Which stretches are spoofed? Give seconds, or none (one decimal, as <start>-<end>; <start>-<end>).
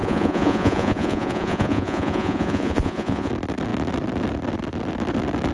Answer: 0.0-3.3